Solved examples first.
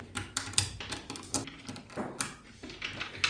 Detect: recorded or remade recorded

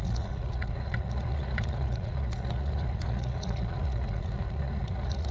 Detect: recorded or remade remade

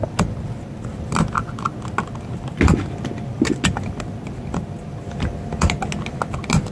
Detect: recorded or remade recorded